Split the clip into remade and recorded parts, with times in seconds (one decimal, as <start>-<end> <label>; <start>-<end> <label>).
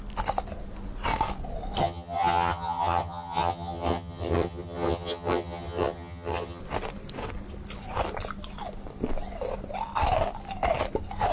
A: 0.0-1.8 recorded; 1.8-6.6 remade; 6.6-11.3 recorded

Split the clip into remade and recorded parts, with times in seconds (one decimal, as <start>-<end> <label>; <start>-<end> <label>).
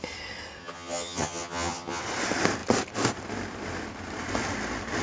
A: 0.0-0.6 recorded; 0.6-2.0 remade; 2.0-5.0 recorded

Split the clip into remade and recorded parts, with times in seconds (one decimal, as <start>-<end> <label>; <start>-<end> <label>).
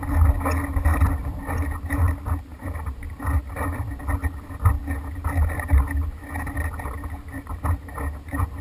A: 0.0-2.5 recorded; 2.5-3.0 remade; 3.0-8.6 recorded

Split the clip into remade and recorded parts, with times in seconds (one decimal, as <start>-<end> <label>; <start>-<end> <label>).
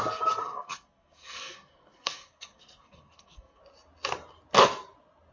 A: 0.0-0.4 recorded; 0.4-3.6 remade; 3.6-5.3 recorded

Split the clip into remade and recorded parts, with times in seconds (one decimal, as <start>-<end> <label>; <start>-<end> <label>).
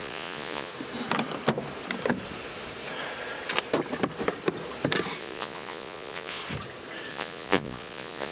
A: 0.0-0.7 remade; 0.7-5.2 recorded; 5.2-6.4 remade; 6.4-7.1 recorded; 7.1-8.3 remade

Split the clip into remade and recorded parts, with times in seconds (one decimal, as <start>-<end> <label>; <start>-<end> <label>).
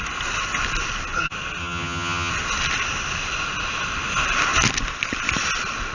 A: 0.0-1.6 recorded; 1.6-2.3 remade; 2.3-5.9 recorded